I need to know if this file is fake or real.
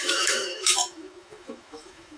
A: fake